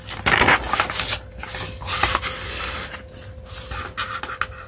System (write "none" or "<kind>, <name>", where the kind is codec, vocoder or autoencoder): none